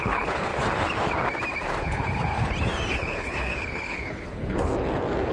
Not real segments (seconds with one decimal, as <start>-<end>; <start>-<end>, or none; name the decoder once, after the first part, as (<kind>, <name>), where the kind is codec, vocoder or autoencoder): 0.0-0.5 (codec, HILCodec); 1.8-2.3; 2.9-4.7